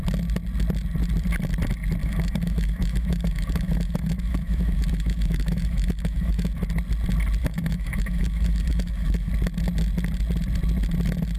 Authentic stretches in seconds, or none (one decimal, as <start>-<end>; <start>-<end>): 0.0-2.0; 6.6-7.4; 9.3-11.4